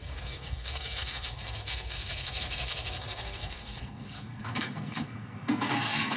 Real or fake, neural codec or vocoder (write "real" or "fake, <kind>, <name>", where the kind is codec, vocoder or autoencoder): fake, codec, SNAC